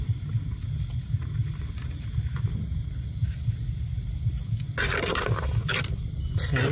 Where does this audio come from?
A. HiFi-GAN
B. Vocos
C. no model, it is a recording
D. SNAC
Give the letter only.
C